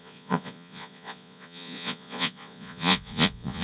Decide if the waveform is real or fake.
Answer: fake